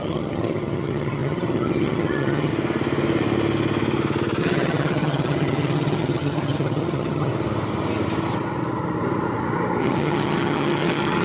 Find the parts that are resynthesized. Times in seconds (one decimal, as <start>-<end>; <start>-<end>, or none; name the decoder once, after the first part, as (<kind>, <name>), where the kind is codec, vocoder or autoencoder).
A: 0.0-2.5 (vocoder, HiFi-GAN); 4.4-7.3; 9.8-11.2